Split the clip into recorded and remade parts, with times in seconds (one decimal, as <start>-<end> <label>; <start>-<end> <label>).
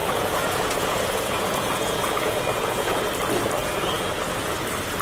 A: 0.0-3.0 remade; 3.0-5.0 recorded